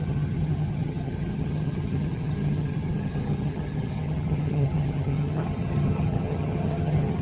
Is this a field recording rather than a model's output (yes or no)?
no